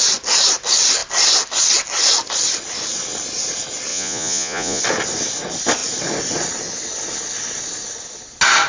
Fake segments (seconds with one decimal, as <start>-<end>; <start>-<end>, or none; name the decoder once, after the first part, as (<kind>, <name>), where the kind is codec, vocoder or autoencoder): 3.9-4.8 (vocoder, Vocos)